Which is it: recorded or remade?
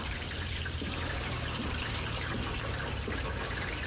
remade